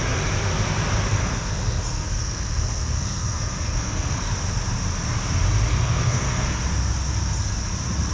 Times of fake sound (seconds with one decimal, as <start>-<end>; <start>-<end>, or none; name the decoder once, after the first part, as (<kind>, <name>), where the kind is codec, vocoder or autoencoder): 1.1-4.2 (codec, SNAC); 5.7-6.6